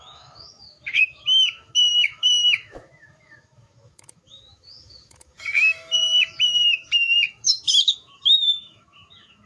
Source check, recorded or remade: remade